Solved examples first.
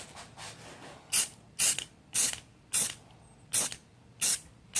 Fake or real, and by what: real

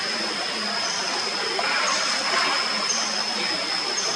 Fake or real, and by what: real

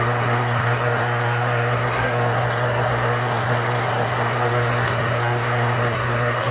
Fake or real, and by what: fake, codec, SNAC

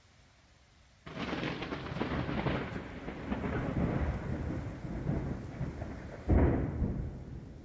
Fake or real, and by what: real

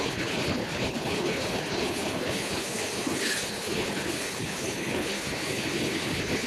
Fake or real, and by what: fake, codec, HILCodec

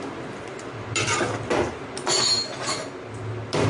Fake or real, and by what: real